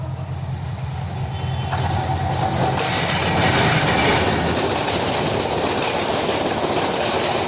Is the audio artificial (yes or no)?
no